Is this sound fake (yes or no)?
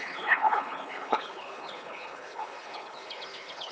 yes